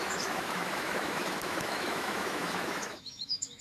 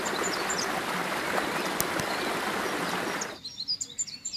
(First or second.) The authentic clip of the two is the second